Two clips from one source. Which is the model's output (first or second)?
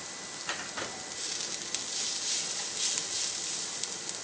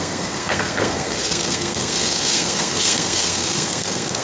second